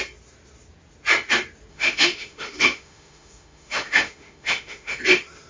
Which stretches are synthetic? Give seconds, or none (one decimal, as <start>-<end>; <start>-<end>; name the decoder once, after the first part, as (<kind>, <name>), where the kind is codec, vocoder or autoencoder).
1.7-5.0 (autoencoder, DAC-VAE)